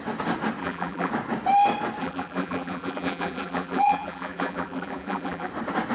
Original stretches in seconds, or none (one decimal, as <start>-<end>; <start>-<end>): 0.0-0.6; 1.1-2.0; 5.5-5.9